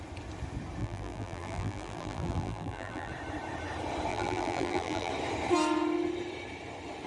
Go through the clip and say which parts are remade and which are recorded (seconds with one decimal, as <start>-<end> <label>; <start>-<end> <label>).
0.0-0.8 recorded; 0.8-3.1 remade; 3.1-4.1 recorded; 4.1-5.1 remade; 5.1-7.1 recorded